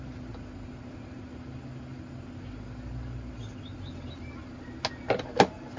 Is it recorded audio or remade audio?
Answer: recorded